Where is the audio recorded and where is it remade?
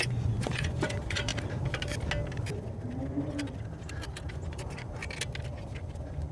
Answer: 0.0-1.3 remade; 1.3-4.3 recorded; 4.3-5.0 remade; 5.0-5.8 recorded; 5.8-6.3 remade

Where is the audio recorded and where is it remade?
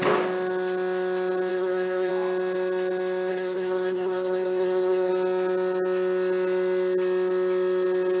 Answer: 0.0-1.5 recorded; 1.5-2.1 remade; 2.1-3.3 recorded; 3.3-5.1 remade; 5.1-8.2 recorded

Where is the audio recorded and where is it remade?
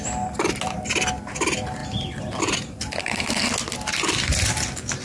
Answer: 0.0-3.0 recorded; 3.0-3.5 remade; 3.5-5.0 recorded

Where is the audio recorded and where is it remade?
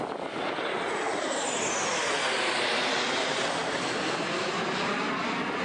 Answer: 0.0-5.6 recorded